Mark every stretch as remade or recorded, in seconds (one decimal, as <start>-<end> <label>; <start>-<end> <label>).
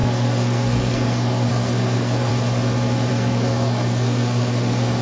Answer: 0.0-2.3 remade; 2.3-3.1 recorded; 3.1-5.0 remade